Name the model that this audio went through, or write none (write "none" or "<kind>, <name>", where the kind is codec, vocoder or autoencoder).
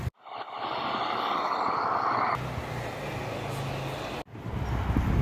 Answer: none